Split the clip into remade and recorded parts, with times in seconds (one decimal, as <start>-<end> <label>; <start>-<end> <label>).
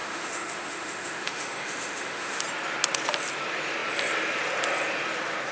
0.0-2.4 remade; 2.4-5.5 recorded